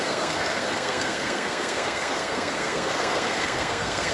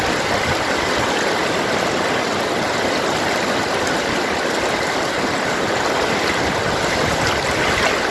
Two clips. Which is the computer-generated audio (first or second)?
first